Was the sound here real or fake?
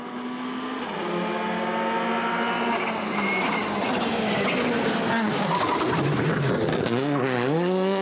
real